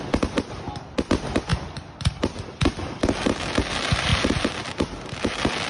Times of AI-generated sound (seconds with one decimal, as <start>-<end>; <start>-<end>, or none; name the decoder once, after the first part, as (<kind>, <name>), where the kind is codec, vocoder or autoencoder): none